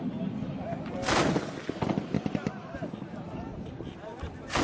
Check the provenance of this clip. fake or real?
real